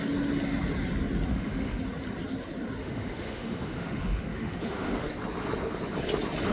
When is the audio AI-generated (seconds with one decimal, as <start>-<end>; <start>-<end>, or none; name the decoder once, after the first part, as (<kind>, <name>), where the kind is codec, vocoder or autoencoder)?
1.3-1.8 (autoencoder, DAC-VAE); 2.8-5.1